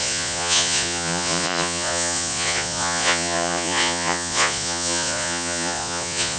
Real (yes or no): no